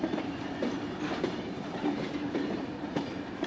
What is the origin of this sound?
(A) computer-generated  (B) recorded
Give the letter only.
A